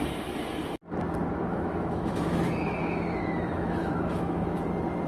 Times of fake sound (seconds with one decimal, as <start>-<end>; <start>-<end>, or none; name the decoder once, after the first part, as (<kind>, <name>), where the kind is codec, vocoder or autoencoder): 1.5-4.6 (autoencoder, DAC-VAE)